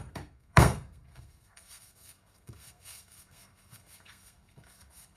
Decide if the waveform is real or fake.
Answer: fake